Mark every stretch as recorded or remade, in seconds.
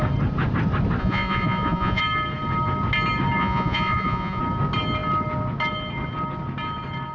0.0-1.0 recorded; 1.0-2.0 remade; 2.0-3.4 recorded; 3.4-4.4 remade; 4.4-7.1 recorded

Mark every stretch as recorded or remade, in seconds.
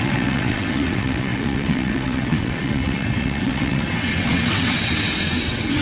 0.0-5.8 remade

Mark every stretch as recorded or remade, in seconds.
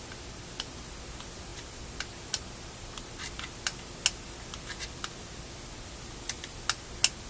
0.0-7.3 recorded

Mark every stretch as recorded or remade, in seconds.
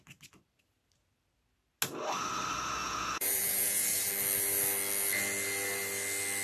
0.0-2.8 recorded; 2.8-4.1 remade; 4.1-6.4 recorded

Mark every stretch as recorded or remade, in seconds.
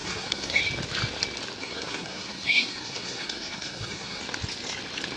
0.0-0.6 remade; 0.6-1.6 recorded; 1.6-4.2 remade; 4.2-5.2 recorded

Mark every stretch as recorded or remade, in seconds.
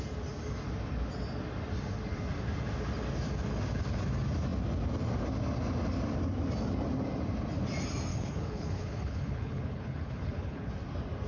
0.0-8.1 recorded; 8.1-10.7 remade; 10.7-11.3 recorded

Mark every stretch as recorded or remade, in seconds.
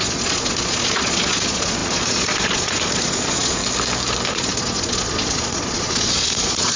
0.0-3.6 remade; 3.6-4.3 recorded; 4.3-6.8 remade